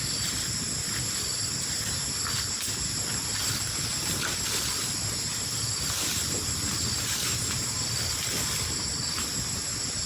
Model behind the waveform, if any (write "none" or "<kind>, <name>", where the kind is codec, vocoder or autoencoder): none